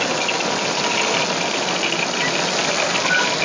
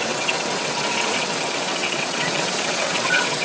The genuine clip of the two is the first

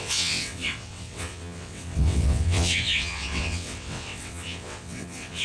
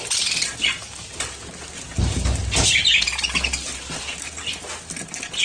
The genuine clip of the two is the second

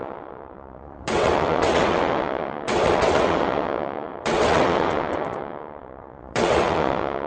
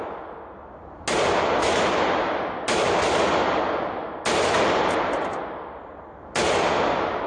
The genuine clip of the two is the second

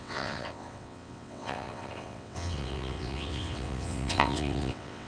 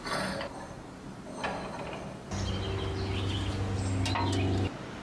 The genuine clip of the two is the second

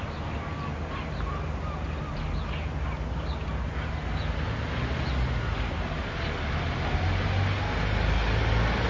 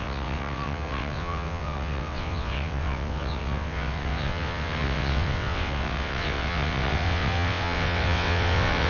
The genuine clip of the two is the first